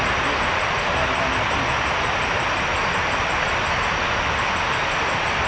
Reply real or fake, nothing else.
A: real